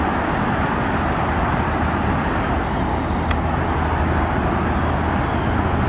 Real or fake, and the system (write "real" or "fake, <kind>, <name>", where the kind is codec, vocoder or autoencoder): real